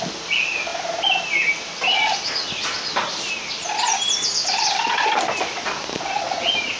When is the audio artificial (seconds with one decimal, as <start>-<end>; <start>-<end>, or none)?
none